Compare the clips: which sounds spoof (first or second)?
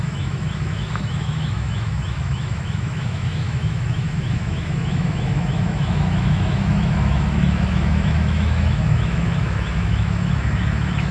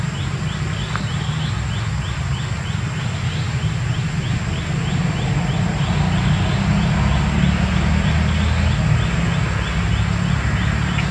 first